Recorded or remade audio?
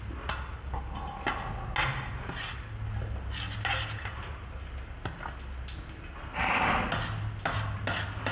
recorded